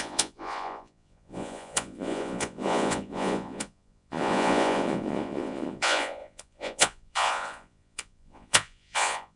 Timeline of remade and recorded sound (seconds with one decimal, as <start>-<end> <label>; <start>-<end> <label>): 0.0-9.4 remade